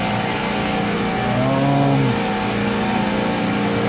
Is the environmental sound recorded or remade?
recorded